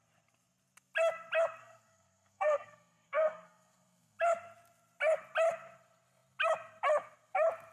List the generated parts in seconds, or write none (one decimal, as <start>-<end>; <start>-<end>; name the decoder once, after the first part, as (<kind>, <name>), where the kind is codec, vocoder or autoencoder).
1.6-4.2 (codec, SNAC)